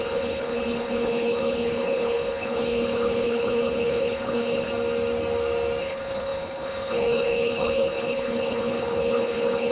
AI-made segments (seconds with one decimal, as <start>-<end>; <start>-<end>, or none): 0.0-4.7; 5.8-9.7